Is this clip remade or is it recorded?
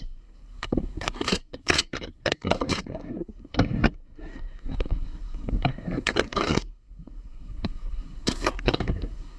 remade